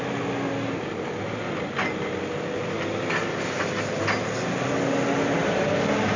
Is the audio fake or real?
real